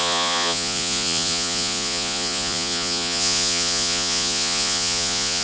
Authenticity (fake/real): fake